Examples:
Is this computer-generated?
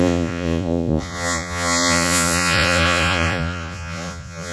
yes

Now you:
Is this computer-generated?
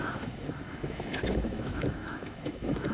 yes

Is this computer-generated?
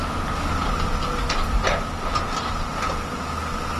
no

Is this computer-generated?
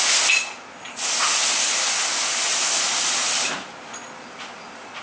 no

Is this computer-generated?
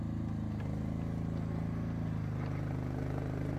no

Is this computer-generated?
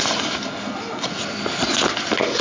no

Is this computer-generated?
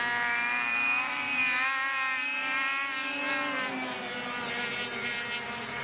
no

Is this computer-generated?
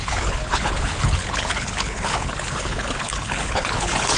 yes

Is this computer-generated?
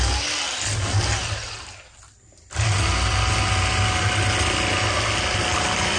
no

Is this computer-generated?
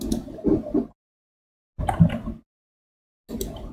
no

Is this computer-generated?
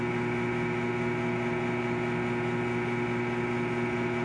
no